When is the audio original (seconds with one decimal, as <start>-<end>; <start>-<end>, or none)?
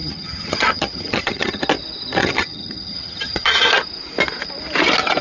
1.6-2.2; 3.7-5.2